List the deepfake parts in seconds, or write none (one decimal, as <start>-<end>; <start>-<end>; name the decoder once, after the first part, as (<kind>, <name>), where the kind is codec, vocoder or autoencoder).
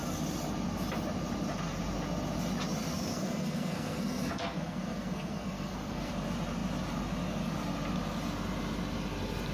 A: 3.1-6.1 (codec, SNAC)